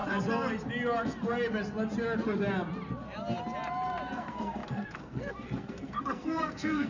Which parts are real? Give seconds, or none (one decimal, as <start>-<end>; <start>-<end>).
0.0-4.1